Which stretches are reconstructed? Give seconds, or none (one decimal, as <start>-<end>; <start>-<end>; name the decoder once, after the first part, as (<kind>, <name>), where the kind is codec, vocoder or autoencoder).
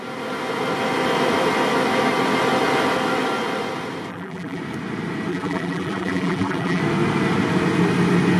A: 4.1-4.6 (vocoder, BigVGAN v2); 5.3-6.8